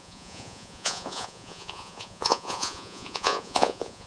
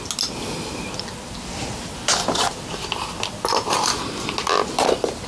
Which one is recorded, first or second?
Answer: second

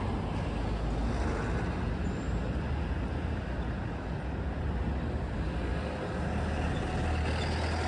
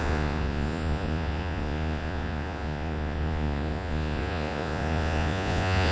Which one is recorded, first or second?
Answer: first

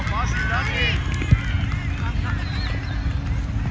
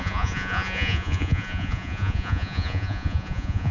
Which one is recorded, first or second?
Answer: first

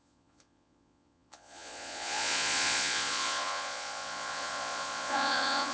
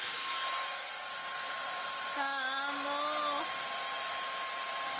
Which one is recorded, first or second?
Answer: second